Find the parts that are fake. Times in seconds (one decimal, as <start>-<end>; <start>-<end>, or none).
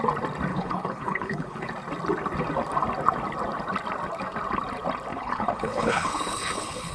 0.5-1.7; 5.1-6.9